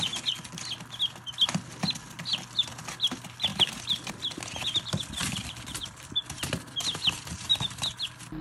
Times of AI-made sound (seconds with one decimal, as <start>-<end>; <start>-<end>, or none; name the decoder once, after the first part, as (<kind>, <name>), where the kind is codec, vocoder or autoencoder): 3.5-4.1 (vocoder, BigVGAN v2); 5.2-7.8